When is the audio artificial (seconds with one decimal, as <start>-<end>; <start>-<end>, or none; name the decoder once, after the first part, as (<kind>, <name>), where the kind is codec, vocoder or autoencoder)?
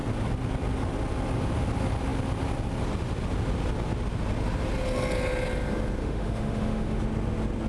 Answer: 6.0-7.0 (autoencoder, DAC-VAE)